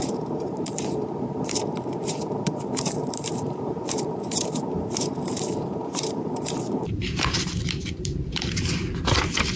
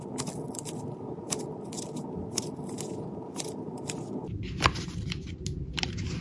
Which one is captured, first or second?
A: second